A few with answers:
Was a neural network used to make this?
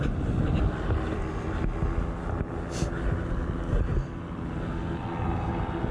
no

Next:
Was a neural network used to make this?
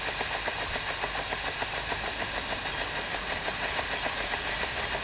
no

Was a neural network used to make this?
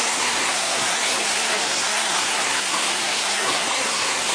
yes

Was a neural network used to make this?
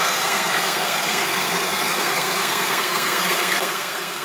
yes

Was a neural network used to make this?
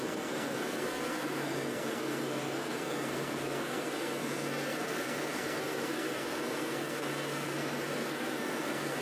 yes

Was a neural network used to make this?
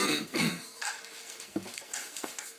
yes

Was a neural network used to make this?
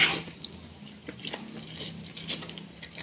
no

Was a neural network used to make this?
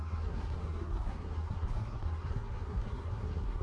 yes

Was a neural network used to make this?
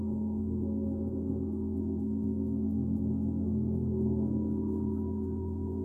yes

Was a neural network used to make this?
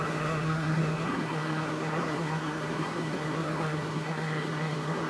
yes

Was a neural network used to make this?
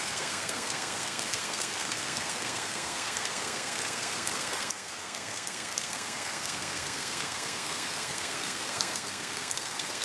yes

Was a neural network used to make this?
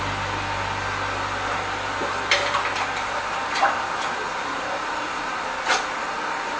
no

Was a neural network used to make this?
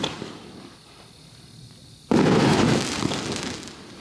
no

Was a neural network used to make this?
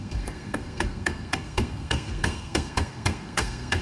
yes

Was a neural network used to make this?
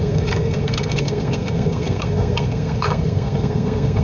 yes